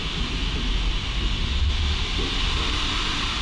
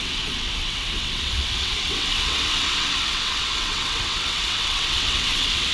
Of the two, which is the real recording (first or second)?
first